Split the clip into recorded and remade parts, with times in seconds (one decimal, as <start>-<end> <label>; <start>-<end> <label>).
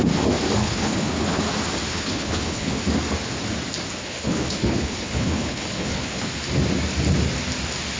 0.0-0.6 recorded; 0.6-1.4 remade; 1.4-1.9 recorded; 1.9-2.8 remade; 2.8-4.0 recorded; 4.0-6.3 remade; 6.3-8.0 recorded